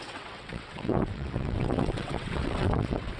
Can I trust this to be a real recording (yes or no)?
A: no